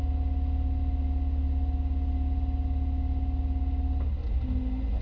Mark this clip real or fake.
real